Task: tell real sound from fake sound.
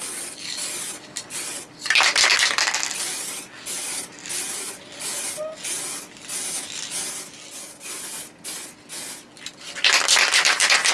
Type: real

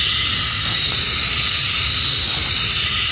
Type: real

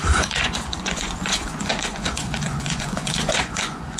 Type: fake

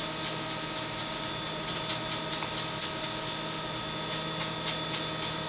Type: real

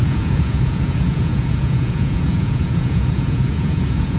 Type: fake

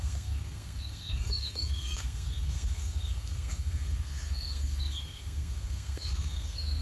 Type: fake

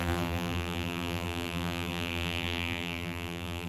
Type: fake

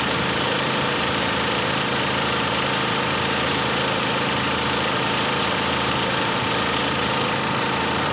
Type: fake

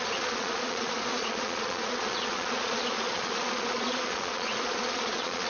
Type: fake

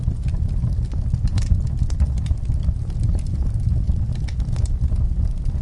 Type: real